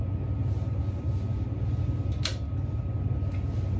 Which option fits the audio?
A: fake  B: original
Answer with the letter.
B